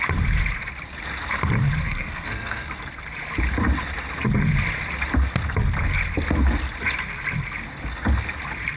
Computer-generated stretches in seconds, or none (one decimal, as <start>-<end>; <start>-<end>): 1.8-2.7